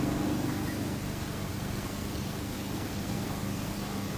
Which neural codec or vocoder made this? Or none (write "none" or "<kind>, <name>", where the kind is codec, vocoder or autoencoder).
codec, SNAC